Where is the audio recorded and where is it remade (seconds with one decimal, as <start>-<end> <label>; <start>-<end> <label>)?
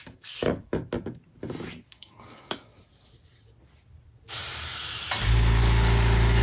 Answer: 0.0-0.7 remade; 0.7-1.9 recorded; 1.9-2.7 remade; 2.7-5.6 recorded; 5.6-6.4 remade